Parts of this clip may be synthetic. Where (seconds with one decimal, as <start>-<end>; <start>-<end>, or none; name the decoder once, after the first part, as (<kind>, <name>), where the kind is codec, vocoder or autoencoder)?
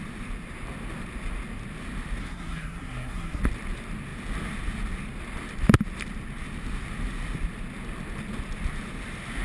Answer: 2.2-3.4 (codec, SNAC)